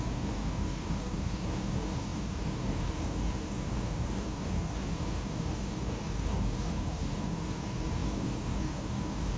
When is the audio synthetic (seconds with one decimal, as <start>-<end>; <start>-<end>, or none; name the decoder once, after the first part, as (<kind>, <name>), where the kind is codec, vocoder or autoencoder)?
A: 0.0-9.4 (codec, DAC)